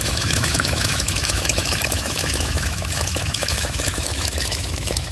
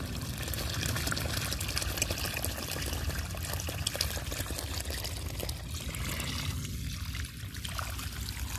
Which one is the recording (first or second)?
second